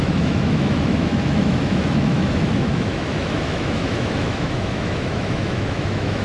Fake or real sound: fake